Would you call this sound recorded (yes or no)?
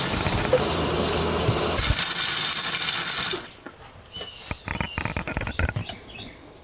no